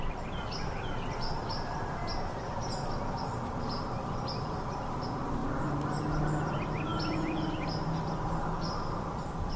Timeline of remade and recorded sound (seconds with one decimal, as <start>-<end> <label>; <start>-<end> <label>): 0.0-9.6 recorded